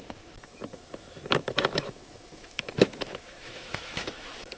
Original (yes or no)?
no